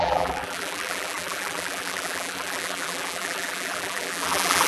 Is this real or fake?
fake